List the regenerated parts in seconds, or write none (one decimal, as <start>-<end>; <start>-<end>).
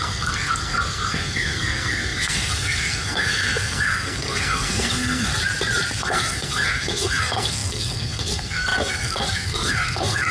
0.0-5.3; 6.0-10.3